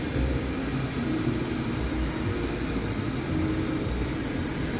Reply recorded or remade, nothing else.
recorded